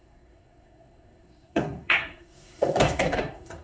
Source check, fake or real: fake